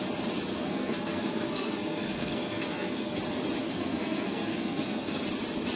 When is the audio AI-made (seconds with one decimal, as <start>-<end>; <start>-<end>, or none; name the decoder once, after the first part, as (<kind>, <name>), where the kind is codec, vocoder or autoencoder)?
0.5-3.2 (codec, SNAC); 3.6-5.2